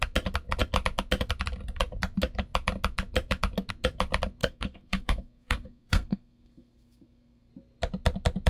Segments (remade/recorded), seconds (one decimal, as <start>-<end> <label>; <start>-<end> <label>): 0.0-4.4 recorded; 4.4-7.5 remade; 7.5-8.5 recorded